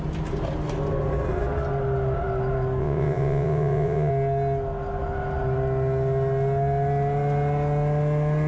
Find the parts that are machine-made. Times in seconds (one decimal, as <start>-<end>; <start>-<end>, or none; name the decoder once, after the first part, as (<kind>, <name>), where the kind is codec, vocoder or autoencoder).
2.8-4.1 (vocoder, Vocos)